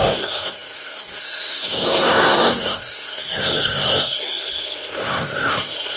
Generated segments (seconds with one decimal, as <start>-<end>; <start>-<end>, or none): 0.0-6.0